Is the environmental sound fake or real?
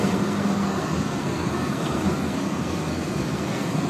fake